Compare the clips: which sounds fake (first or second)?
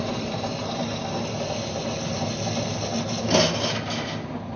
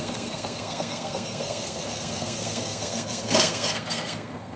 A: second